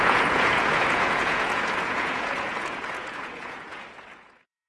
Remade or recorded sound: remade